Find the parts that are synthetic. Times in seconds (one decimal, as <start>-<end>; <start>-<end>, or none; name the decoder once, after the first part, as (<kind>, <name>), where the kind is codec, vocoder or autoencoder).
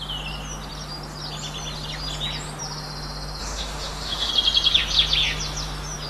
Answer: 3.4-4.3 (autoencoder, DAC-VAE)